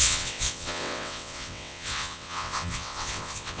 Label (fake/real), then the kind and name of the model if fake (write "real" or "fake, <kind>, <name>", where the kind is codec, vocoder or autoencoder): fake, vocoder, WaveNeXt